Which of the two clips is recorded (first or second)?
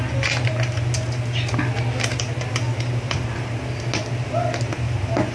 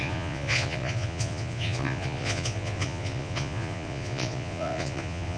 first